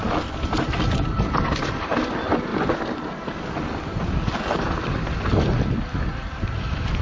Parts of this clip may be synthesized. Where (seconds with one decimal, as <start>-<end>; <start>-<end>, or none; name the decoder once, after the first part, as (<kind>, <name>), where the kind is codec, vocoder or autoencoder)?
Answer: none